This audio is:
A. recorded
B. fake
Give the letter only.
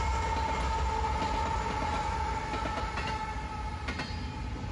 A